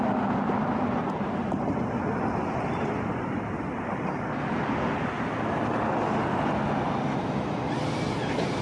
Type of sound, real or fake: real